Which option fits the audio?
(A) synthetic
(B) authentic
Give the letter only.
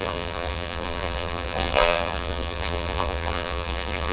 A